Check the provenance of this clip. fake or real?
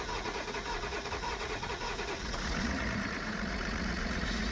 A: fake